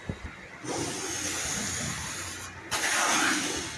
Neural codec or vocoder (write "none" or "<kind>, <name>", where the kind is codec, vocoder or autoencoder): none